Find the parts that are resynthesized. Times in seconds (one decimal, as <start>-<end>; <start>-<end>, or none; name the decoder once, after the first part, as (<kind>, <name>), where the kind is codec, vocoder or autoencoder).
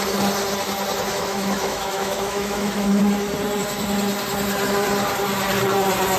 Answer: 1.1-3.0 (autoencoder, DAC-VAE)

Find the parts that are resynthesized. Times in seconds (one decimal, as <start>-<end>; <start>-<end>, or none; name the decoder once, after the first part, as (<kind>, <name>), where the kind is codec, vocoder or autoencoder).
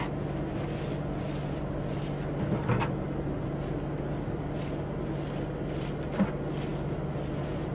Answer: none